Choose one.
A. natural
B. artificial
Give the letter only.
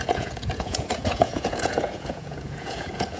B